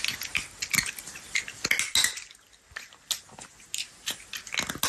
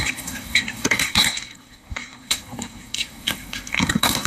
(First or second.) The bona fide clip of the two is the first